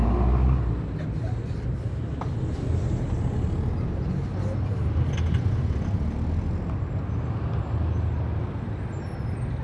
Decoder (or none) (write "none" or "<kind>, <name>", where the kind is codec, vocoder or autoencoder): none